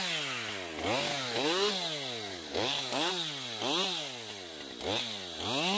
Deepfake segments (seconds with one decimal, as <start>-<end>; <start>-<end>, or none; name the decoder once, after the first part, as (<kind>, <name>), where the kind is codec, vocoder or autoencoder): 1.1-1.7 (codec, DAC); 2.3-3.1